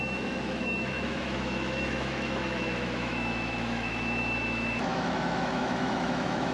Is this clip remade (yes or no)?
yes